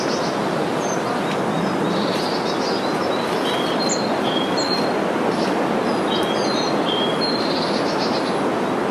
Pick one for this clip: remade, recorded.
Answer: recorded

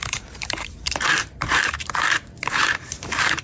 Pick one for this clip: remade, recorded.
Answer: remade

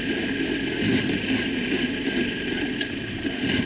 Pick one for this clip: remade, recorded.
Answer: remade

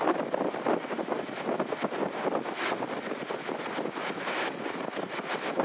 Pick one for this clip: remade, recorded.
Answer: recorded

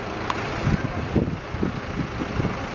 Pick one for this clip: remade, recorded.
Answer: recorded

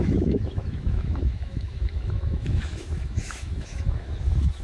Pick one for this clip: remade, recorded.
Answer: remade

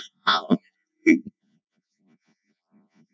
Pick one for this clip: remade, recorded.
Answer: remade